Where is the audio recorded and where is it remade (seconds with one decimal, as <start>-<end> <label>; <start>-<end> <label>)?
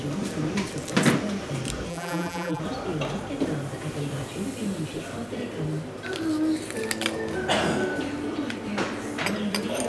0.0-1.9 recorded; 1.9-2.6 remade; 2.6-9.9 recorded